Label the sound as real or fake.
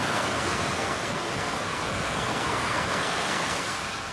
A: fake